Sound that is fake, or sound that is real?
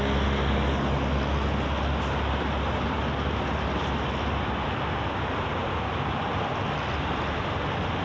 real